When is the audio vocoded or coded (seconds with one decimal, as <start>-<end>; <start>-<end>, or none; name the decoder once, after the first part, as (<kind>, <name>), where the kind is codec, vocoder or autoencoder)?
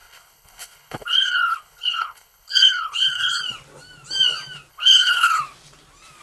0.0-3.4 (codec, HILCodec); 4.7-5.4